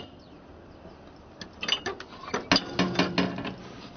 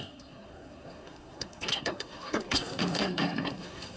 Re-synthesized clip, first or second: second